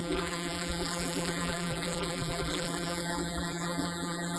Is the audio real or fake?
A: fake